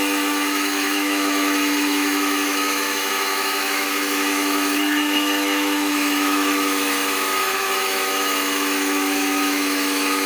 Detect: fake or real fake